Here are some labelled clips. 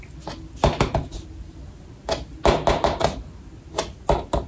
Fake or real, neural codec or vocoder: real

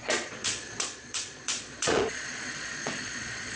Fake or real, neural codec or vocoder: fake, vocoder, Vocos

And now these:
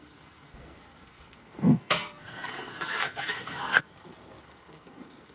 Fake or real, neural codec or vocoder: fake, codec, SNAC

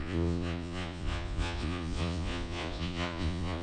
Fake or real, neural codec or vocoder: fake, vocoder, Vocos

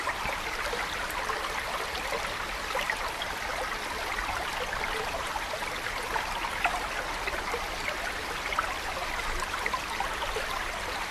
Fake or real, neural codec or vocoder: real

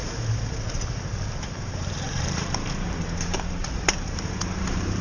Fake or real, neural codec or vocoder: fake, vocoder, BigVGAN v2